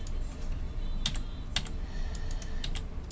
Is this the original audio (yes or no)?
yes